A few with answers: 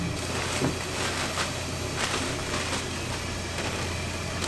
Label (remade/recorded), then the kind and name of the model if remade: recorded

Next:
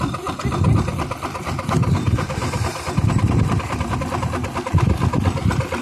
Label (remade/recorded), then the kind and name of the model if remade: remade, vocoder, BigVGAN v2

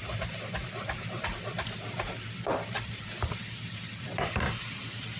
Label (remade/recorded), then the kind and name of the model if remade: remade, vocoder, BigVGAN v2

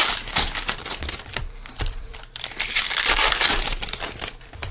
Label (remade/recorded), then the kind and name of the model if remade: remade, vocoder, BigVGAN v2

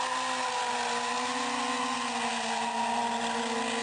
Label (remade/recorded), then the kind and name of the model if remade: recorded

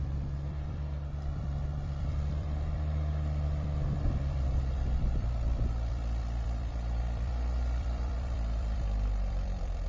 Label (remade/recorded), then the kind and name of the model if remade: remade, vocoder, BigVGAN v2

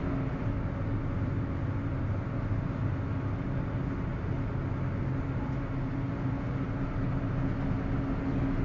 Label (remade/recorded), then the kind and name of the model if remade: recorded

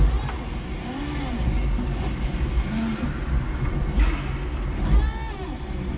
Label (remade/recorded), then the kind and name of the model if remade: recorded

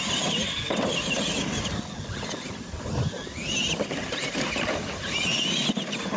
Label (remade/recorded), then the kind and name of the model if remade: recorded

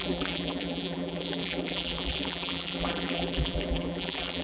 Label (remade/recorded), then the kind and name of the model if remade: remade, vocoder, BigVGAN v2